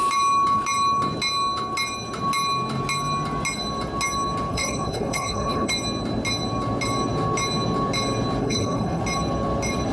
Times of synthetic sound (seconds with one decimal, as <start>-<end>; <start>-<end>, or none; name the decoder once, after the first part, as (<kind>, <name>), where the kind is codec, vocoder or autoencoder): 4.5-5.7 (codec, HILCodec); 8.4-9.0